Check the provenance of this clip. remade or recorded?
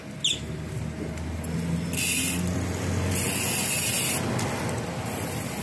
recorded